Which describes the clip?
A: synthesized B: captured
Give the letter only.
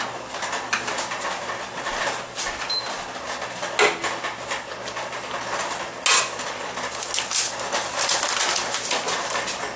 B